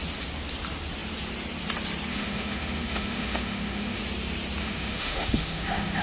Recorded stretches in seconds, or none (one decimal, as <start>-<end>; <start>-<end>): 0.0-2.1; 4.0-4.6